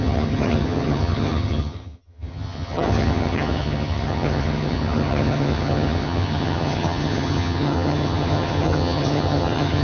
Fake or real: fake